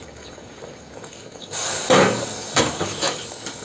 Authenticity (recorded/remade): remade